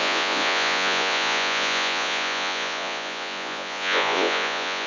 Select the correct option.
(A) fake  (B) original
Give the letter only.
A